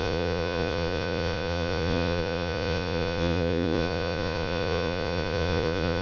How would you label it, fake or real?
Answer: fake